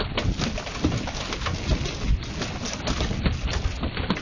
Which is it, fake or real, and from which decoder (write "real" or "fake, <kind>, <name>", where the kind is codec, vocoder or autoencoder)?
real